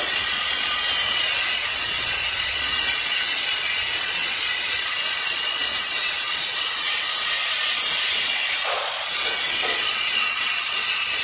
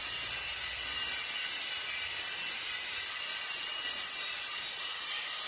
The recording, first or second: second